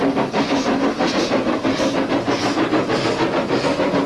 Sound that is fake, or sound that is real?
real